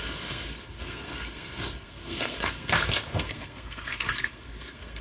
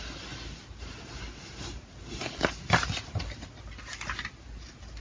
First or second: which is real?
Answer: second